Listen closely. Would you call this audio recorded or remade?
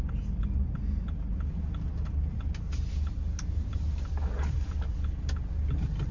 recorded